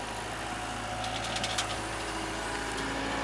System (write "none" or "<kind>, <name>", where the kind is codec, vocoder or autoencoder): none